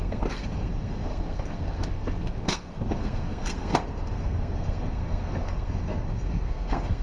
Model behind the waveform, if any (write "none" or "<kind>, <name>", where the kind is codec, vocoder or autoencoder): codec, SNAC